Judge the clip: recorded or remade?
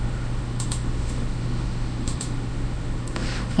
remade